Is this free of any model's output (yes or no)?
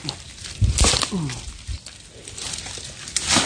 yes